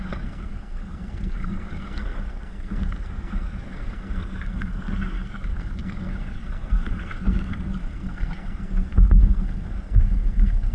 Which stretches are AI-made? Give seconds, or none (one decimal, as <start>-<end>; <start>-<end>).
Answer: 0.0-10.7